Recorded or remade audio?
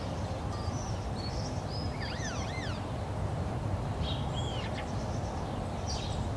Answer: recorded